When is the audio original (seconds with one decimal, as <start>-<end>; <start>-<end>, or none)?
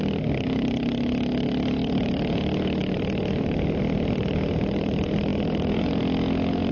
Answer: 0.0-1.8; 2.4-5.3; 6.0-6.7